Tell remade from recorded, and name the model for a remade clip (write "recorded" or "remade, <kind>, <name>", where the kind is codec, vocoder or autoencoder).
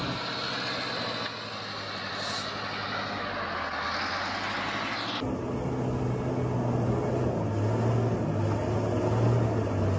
recorded